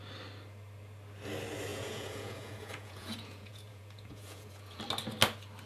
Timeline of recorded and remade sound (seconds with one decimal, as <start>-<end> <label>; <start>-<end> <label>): 0.0-1.7 recorded; 1.7-4.8 remade; 4.8-5.7 recorded